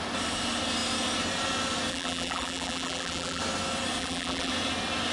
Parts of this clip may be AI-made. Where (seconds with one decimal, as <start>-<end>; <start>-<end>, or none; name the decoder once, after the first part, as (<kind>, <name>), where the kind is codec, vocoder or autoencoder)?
1.9-3.4 (vocoder, BigVGAN v2); 4.0-4.5